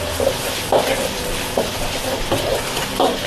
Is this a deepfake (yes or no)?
no